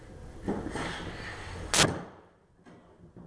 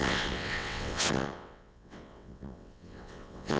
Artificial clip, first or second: second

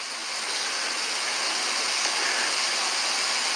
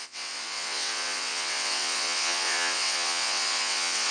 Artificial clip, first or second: second